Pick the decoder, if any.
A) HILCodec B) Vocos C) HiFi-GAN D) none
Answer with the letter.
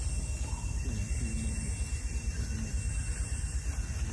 D